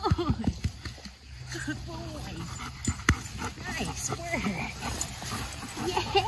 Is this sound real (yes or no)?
yes